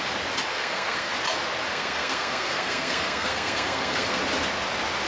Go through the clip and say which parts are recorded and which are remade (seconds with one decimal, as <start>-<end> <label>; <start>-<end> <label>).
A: 0.0-0.5 recorded; 0.5-1.1 remade; 1.1-1.7 recorded; 1.7-4.2 remade; 4.2-5.1 recorded